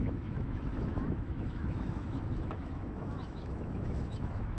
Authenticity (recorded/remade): remade